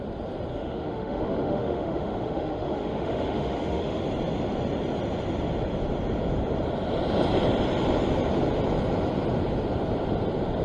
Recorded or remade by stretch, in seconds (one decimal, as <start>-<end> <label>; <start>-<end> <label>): 0.0-0.5 recorded; 0.5-4.0 remade; 4.0-10.6 recorded

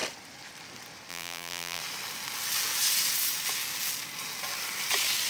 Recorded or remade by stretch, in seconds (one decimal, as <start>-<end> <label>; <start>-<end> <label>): 0.0-1.1 recorded; 1.1-1.8 remade; 1.8-5.3 recorded

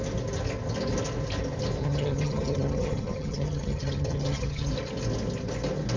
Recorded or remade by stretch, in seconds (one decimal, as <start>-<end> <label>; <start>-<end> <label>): 0.0-1.8 recorded; 1.8-4.7 remade; 4.7-6.0 recorded